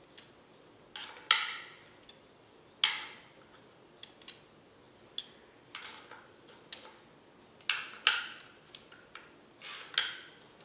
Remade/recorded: recorded